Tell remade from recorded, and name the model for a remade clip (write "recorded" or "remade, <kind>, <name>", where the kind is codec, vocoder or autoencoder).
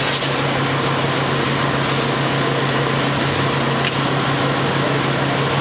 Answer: recorded